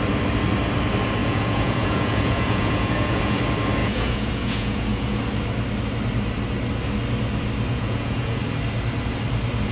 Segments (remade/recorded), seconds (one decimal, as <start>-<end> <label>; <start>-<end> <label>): 0.0-1.2 recorded; 1.2-3.4 remade; 3.4-3.8 recorded; 3.8-5.2 remade; 5.2-7.7 recorded; 7.7-8.4 remade; 8.4-9.7 recorded